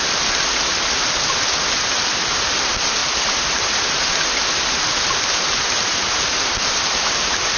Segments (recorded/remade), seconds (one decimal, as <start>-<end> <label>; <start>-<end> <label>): 0.0-7.6 recorded